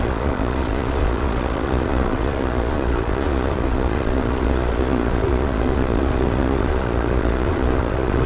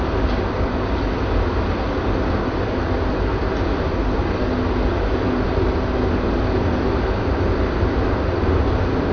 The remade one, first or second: first